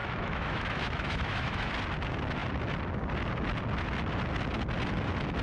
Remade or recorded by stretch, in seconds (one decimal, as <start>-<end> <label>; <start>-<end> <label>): 0.0-1.7 remade; 1.7-5.4 recorded